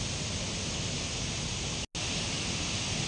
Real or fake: real